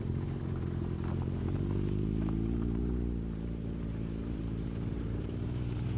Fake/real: fake